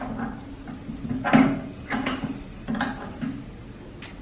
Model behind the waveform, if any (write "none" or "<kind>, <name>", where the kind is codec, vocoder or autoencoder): none